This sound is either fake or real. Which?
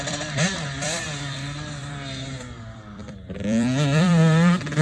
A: fake